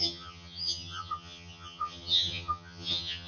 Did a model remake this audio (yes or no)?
yes